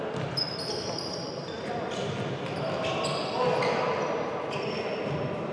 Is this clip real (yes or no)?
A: yes